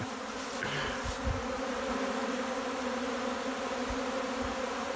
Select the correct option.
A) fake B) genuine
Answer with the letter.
B